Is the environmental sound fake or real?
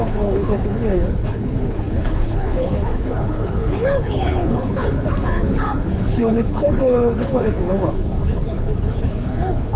fake